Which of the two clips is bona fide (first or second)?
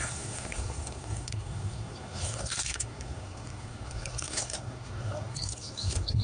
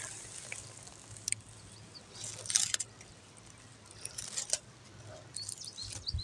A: second